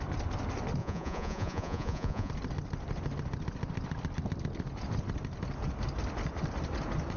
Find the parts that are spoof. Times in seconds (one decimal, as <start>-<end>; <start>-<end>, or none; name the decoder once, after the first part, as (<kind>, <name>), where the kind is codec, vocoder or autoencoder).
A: 0.8-2.3 (vocoder, Vocos)